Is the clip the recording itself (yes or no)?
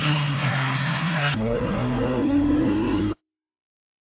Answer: no